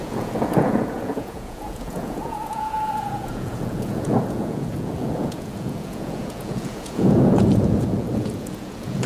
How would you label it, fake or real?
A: fake